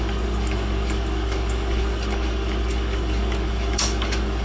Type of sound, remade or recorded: remade